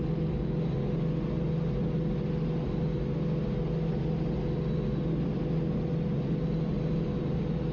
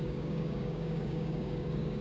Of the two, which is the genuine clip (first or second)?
first